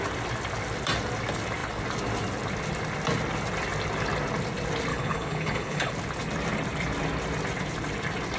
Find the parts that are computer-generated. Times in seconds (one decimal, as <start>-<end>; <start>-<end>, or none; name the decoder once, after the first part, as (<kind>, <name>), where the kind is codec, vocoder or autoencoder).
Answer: 4.9-5.9 (codec, HILCodec)